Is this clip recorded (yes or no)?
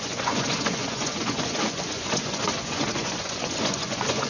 no